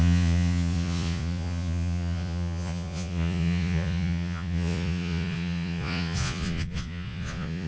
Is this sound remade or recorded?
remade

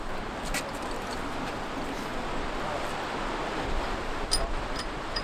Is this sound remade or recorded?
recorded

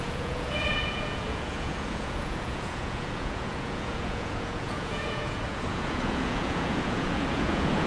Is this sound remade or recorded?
remade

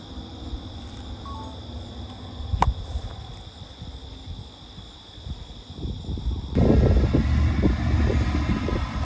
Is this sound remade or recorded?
recorded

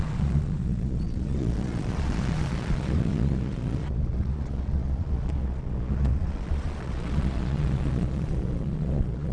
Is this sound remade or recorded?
remade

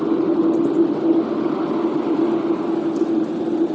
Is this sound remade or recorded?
recorded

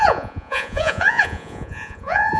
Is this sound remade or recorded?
remade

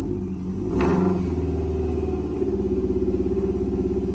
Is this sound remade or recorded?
recorded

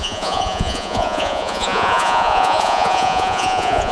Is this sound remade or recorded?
remade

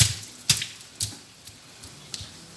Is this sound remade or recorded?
recorded